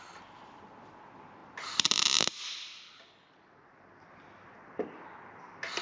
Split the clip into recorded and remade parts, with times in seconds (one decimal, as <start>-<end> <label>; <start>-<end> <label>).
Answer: 0.0-5.8 recorded